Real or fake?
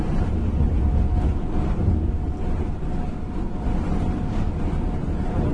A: real